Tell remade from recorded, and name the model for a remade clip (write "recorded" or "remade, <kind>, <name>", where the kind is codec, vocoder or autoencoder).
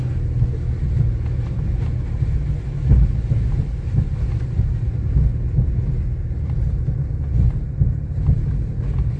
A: recorded